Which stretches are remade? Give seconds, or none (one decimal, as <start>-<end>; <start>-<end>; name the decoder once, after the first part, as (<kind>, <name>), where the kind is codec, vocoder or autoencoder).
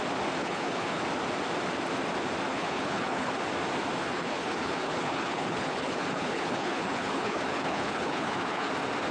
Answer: 0.4-1.0 (codec, HILCodec); 2.5-3.3; 4.0-8.7